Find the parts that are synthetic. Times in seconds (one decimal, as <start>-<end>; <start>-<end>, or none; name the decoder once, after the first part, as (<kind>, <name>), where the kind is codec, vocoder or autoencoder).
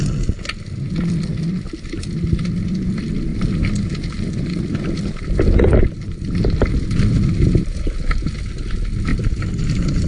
3.3-8.3 (vocoder, BigVGAN v2); 9.1-10.1